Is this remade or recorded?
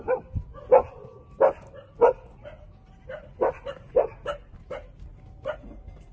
recorded